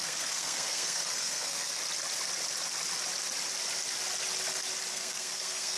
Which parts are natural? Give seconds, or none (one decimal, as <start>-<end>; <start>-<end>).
1.8-4.9